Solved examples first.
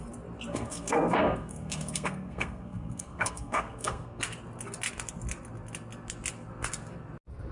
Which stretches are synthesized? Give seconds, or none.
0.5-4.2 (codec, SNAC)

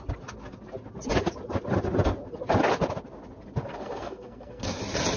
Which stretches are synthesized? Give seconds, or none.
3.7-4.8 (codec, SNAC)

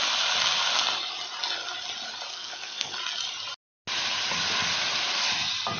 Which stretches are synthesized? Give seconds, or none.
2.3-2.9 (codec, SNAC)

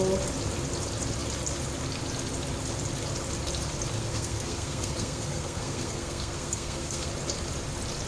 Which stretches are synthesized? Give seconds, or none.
4.0-7.1 (codec, SNAC)

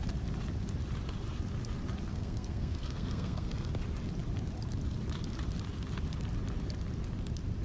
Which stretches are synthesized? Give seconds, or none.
2.1-3.7 (codec, SNAC)